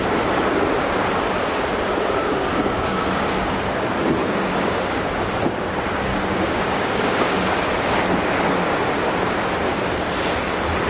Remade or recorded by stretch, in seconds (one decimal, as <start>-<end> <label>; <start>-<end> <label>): 0.0-0.6 remade; 0.6-2.2 recorded; 2.2-3.6 remade; 3.6-4.2 recorded; 4.2-5.0 remade; 5.0-6.1 recorded; 6.1-7.7 remade; 7.7-10.9 recorded